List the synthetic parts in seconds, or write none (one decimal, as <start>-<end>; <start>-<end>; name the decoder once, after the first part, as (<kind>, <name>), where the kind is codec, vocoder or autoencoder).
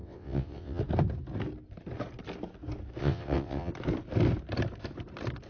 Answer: 0.0-0.8 (vocoder, WaveNeXt); 3.0-3.7